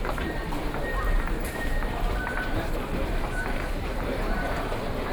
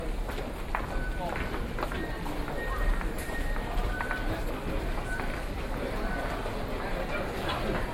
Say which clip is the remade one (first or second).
first